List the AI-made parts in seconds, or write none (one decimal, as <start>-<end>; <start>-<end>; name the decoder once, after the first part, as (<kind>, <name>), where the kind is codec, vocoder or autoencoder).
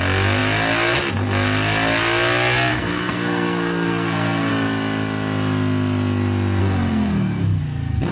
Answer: 2.7-4.5 (codec, SNAC); 6.6-7.6